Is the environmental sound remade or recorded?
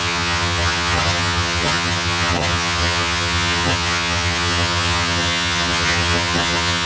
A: remade